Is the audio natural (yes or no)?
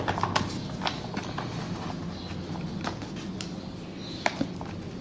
yes